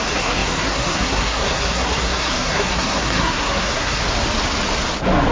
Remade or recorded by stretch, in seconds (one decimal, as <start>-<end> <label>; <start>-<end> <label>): 0.0-4.0 remade; 4.0-5.3 recorded